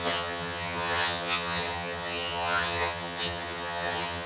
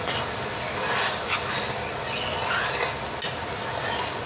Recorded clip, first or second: second